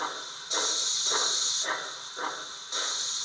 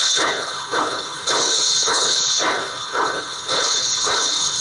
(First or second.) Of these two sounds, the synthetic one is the second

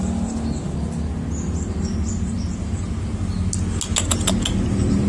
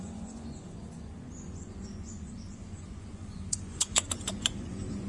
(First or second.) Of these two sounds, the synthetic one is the second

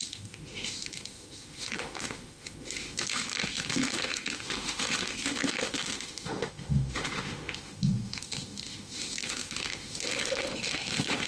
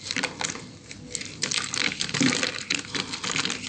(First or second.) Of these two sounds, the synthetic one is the first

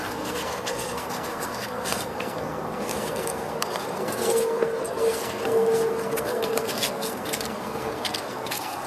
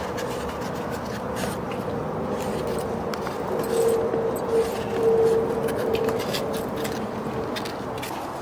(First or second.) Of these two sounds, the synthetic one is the first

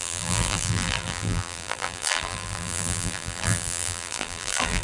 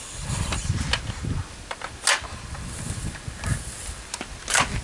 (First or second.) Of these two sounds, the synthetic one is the first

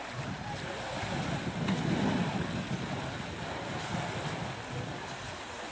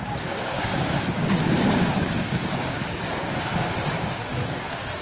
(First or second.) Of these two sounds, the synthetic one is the second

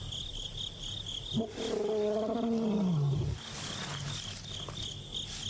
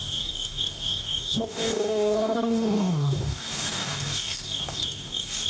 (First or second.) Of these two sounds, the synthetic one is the second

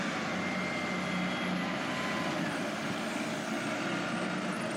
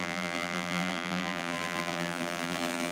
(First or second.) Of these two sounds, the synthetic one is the second